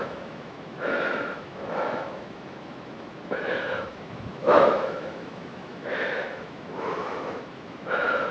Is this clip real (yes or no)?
no